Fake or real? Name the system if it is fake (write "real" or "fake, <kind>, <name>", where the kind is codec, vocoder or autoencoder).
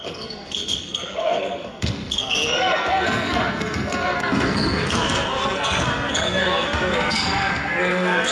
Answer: fake, codec, SNAC